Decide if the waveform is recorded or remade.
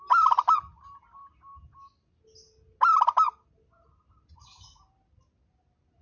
recorded